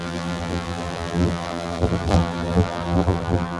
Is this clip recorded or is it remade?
remade